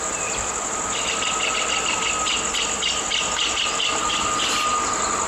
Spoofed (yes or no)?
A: no